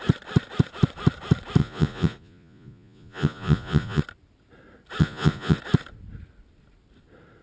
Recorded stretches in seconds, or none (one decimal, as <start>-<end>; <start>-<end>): 0.0-1.6; 4.0-5.0; 5.6-7.4